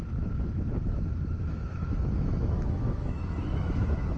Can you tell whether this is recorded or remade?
remade